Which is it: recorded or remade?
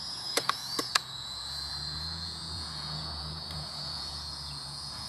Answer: remade